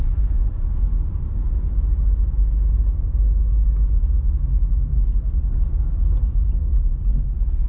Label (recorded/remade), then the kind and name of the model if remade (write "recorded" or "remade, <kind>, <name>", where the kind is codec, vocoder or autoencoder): recorded